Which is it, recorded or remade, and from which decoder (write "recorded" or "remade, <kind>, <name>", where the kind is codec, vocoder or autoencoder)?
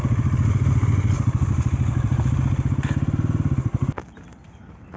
recorded